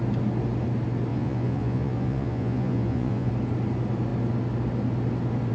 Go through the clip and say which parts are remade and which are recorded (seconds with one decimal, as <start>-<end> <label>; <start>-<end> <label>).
0.0-1.1 recorded; 1.1-3.3 remade; 3.3-5.5 recorded